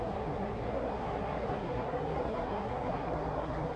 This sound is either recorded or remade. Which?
remade